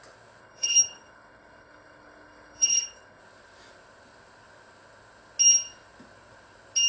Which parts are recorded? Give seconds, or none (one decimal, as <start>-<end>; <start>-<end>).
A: 0.0-0.4; 3.2-6.9